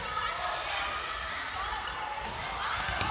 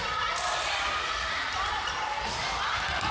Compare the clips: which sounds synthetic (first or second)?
second